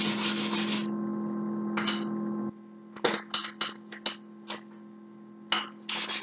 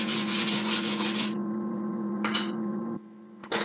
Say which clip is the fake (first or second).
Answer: second